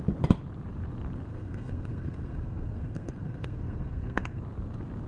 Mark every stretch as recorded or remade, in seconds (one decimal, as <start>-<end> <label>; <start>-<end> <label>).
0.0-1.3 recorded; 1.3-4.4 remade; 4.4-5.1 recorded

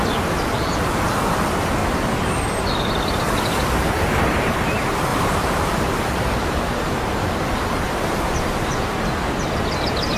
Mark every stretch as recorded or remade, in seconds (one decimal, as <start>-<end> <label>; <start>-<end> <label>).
0.0-1.8 recorded; 1.8-3.0 remade; 3.0-5.1 recorded; 5.1-7.0 remade; 7.0-10.2 recorded

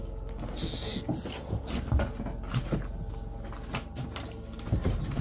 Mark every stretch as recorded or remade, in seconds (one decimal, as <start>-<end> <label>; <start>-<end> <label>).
0.0-5.2 recorded

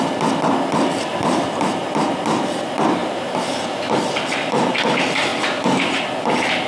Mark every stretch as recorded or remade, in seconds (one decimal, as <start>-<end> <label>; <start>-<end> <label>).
0.0-1.1 recorded; 1.1-1.8 remade; 1.8-3.0 recorded; 3.0-4.0 remade; 4.0-6.7 recorded

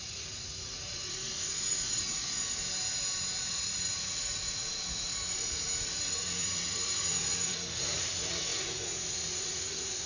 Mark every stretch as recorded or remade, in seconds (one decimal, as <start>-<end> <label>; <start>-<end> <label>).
0.0-2.6 remade; 2.6-3.5 recorded; 3.5-10.1 remade

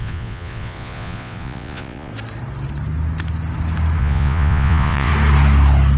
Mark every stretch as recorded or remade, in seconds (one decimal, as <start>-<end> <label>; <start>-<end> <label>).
0.0-2.1 remade; 2.1-4.0 recorded; 4.0-5.1 remade; 5.1-6.0 recorded

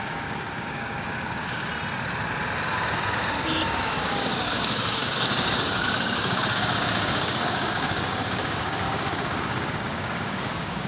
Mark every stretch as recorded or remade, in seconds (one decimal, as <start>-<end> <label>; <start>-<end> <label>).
0.0-1.7 remade; 1.7-2.7 recorded; 2.7-10.9 remade